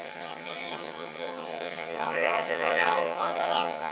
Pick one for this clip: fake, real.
fake